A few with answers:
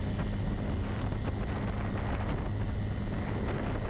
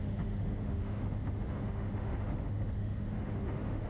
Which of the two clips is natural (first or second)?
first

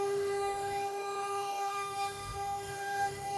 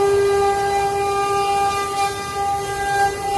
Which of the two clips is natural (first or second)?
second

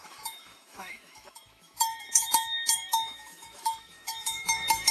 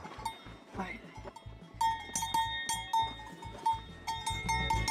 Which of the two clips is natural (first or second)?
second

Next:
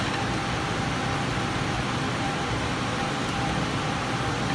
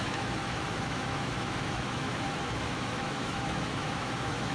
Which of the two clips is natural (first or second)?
first